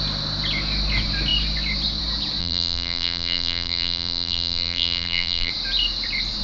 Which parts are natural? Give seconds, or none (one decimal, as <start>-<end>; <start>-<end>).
0.0-2.4; 5.5-6.4